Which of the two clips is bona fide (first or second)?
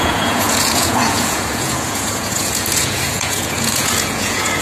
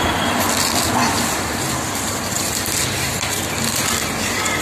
second